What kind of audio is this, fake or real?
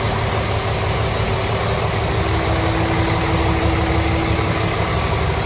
real